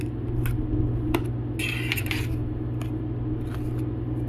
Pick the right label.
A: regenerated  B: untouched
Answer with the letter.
B